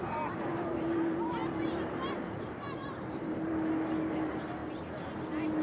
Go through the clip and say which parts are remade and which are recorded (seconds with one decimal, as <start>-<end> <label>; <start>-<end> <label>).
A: 0.0-3.5 remade; 3.5-4.1 recorded; 4.1-4.6 remade; 4.6-5.6 recorded